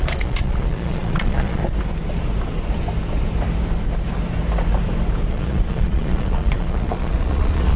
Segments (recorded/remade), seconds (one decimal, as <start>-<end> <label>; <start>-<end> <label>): 0.0-1.6 remade; 1.6-5.3 recorded; 5.3-7.8 remade